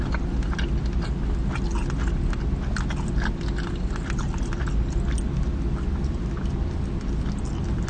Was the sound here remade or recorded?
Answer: recorded